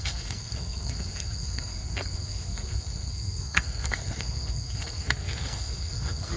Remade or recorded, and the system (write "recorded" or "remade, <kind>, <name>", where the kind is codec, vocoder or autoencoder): remade, codec, SNAC